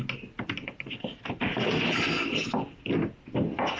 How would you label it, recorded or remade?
recorded